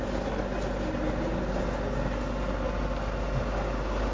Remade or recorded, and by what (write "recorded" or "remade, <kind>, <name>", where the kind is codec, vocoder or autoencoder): recorded